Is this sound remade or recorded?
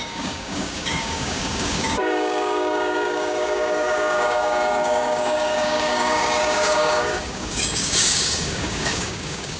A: remade